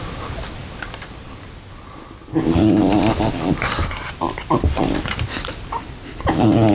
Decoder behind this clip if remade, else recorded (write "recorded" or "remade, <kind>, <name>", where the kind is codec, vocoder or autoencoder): recorded